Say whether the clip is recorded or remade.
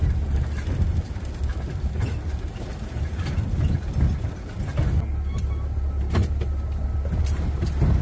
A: recorded